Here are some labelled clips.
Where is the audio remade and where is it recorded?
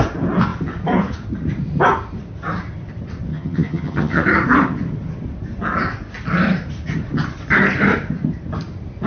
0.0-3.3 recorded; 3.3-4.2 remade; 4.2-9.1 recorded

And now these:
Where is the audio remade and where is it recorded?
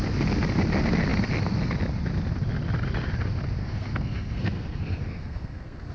0.0-3.6 recorded; 3.6-5.9 remade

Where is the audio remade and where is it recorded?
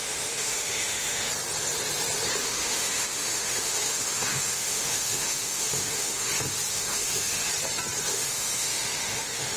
0.0-1.3 remade; 1.3-2.4 recorded; 2.4-6.3 remade; 6.3-6.7 recorded; 6.7-7.5 remade; 7.5-8.1 recorded; 8.1-9.6 remade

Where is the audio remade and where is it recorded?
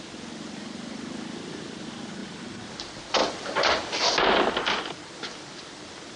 0.0-2.2 recorded; 2.2-2.7 remade; 2.7-6.2 recorded